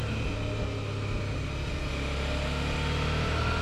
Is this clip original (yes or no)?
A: yes